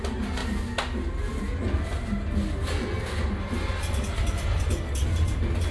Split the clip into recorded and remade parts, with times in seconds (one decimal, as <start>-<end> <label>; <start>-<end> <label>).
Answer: 0.0-5.7 recorded